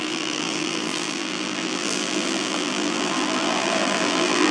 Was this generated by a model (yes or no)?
yes